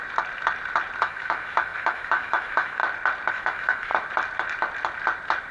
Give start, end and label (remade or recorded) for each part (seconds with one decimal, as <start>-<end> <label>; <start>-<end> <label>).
0.0-1.0 recorded; 1.0-2.8 remade; 2.8-3.3 recorded; 3.3-3.9 remade; 3.9-5.5 recorded